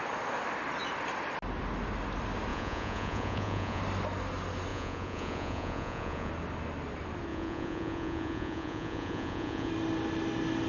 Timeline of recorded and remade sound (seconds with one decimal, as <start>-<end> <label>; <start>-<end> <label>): 0.0-2.5 recorded; 2.5-3.8 remade; 3.8-4.7 recorded; 4.7-6.3 remade; 6.3-7.3 recorded; 7.3-9.7 remade; 9.7-10.7 recorded